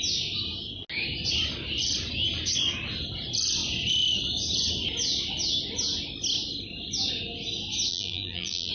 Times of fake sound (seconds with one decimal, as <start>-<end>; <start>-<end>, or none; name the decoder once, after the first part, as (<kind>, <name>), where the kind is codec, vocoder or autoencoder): 7.9-8.7 (vocoder, BigVGAN v2)